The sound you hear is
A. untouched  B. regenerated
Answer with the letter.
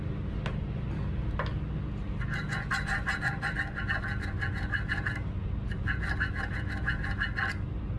A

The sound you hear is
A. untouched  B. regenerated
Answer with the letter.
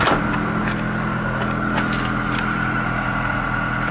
A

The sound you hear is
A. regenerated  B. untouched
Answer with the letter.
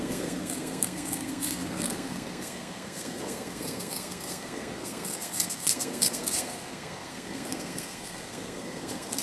A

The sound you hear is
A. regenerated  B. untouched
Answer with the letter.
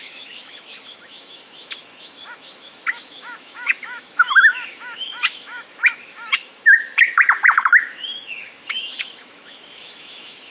A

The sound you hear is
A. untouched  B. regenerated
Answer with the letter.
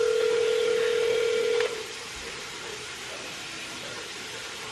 B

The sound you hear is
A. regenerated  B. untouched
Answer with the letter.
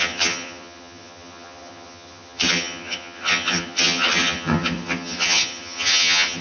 A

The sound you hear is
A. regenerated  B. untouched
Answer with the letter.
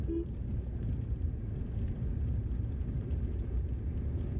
A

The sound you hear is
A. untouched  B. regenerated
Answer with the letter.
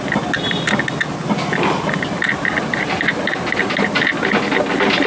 A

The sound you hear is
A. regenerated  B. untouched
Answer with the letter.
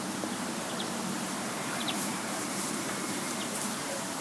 A